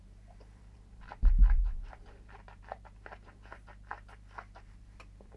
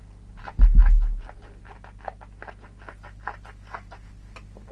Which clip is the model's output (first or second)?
first